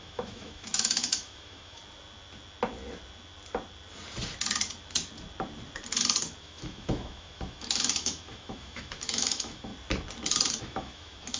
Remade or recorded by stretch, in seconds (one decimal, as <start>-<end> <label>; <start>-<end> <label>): 0.0-1.8 remade; 1.8-6.4 recorded; 6.4-9.7 remade; 9.7-10.6 recorded; 10.6-11.4 remade